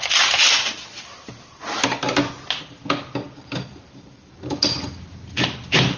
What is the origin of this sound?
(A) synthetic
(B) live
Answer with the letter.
B